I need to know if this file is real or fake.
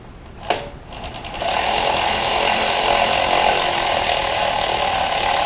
real